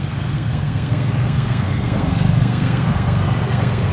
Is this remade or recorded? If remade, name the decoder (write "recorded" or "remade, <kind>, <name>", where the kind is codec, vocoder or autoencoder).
remade, codec, SNAC